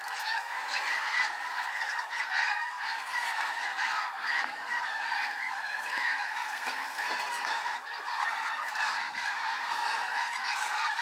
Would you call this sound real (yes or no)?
no